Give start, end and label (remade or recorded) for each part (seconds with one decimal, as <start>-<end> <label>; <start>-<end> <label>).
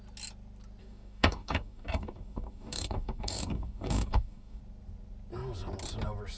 0.0-0.8 recorded; 0.8-4.6 remade; 4.6-6.4 recorded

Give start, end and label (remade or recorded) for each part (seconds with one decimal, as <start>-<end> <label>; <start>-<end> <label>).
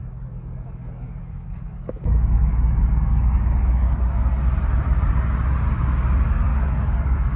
0.0-4.3 remade; 4.3-6.5 recorded; 6.5-7.4 remade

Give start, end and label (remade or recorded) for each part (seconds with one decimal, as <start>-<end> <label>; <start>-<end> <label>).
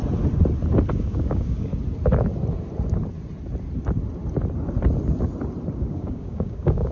0.0-0.9 recorded; 0.9-1.7 remade; 1.7-5.8 recorded; 5.8-6.9 remade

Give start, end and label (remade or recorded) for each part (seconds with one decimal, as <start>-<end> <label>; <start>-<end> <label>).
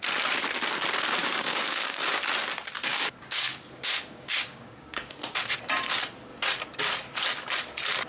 0.0-1.2 recorded; 1.2-2.1 remade; 2.1-2.9 recorded; 2.9-5.2 remade; 5.2-8.1 recorded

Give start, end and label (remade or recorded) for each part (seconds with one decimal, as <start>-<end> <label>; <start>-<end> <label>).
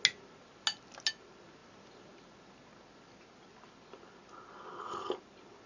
0.0-5.7 recorded